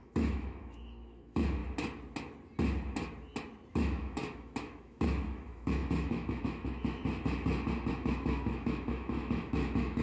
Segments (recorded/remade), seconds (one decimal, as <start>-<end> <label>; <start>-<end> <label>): 0.0-1.6 remade; 1.6-3.7 recorded; 3.7-7.0 remade; 7.0-7.9 recorded; 7.9-10.0 remade